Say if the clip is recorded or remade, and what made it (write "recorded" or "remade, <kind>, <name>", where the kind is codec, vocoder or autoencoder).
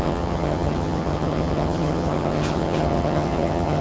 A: remade, vocoder, HiFi-GAN